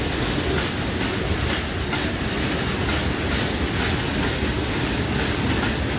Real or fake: real